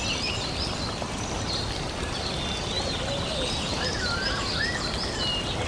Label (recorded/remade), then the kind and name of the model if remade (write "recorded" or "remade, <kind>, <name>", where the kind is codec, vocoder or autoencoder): recorded